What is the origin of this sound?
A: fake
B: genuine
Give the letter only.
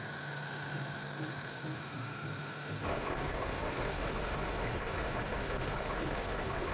A